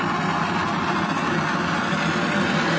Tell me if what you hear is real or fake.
real